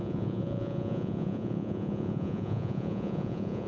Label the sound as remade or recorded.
remade